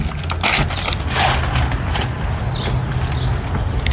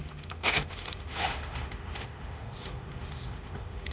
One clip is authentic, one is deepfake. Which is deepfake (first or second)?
second